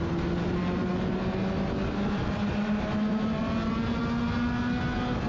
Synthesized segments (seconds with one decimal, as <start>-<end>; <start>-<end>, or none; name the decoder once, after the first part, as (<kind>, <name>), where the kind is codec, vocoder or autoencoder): none